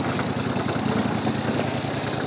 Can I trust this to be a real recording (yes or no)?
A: yes